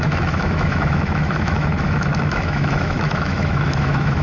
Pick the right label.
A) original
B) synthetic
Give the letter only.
B